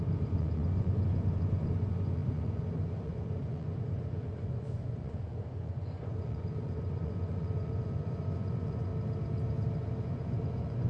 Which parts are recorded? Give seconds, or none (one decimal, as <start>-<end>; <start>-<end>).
8.9-10.0